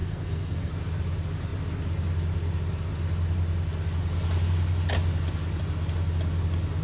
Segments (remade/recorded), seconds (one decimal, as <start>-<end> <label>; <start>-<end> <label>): 0.0-0.7 remade; 0.7-6.8 recorded